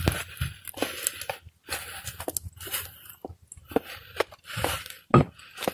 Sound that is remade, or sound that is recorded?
recorded